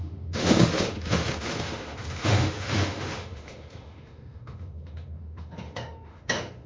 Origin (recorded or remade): remade